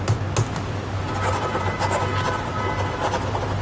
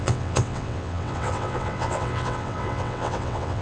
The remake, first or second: second